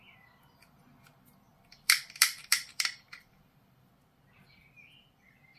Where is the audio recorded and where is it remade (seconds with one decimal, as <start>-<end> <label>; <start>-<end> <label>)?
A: 0.0-1.5 recorded; 1.5-3.9 remade; 3.9-5.6 recorded